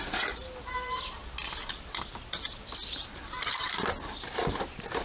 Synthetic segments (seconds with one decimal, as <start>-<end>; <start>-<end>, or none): none